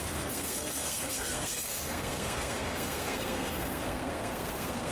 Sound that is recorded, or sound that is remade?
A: remade